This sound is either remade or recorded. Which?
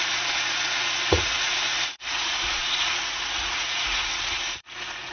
remade